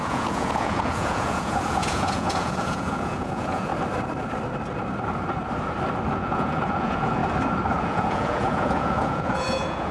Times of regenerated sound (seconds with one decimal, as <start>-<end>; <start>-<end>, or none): 0.0-3.7; 6.1-7.2; 7.8-9.9